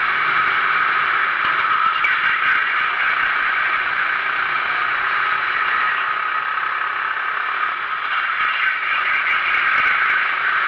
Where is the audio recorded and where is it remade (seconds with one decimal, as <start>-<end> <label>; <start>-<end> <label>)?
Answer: 0.0-2.6 recorded; 2.6-6.4 remade; 6.4-8.8 recorded; 8.8-9.4 remade; 9.4-10.7 recorded